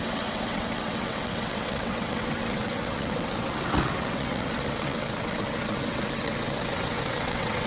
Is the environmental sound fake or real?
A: fake